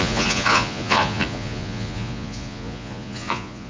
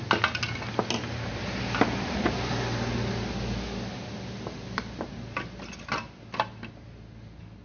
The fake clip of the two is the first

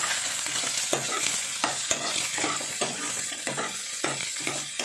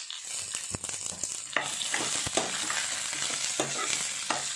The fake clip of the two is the first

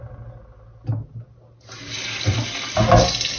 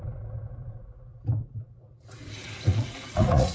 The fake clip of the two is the second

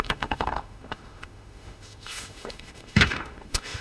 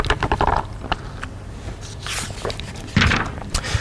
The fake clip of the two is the first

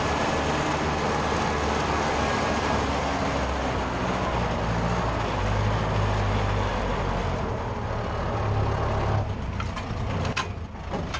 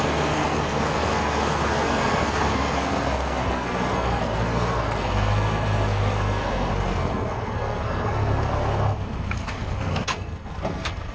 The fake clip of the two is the second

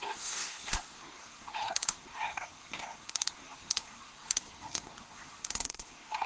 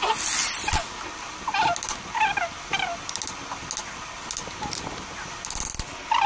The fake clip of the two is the first